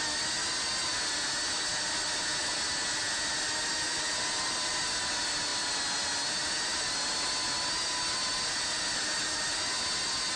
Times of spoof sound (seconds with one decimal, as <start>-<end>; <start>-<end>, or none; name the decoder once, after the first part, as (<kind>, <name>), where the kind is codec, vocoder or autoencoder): none